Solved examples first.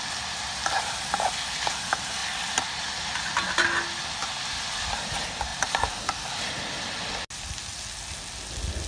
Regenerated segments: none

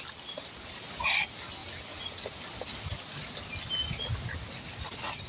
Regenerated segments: none